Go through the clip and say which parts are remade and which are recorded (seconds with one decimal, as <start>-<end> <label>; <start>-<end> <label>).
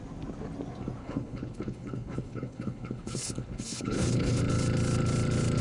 0.0-1.0 recorded; 1.0-4.4 remade; 4.4-5.6 recorded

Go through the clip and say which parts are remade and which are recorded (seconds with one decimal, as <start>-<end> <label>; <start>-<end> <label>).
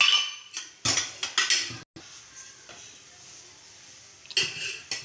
0.0-5.0 recorded